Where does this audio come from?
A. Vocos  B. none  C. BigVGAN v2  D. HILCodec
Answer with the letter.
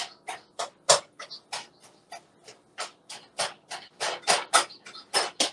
B